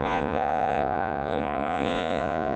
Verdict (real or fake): fake